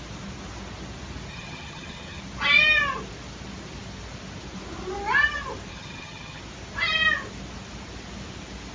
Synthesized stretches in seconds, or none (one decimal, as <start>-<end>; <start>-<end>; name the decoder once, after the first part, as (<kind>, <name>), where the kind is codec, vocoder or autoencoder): 1.3-2.2 (vocoder, HiFi-GAN); 5.7-6.4